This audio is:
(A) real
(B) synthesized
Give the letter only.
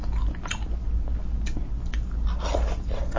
A